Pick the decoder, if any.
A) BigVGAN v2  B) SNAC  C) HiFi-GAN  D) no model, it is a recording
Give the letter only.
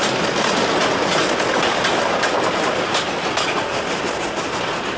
D